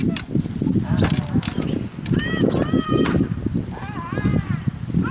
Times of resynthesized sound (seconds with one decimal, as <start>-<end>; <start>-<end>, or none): none